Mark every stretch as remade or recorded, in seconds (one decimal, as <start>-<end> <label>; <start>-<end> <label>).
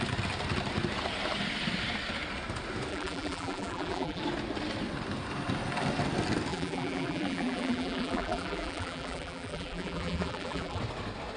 0.0-2.9 recorded; 2.9-4.2 remade; 4.2-6.5 recorded; 6.5-10.8 remade; 10.8-11.4 recorded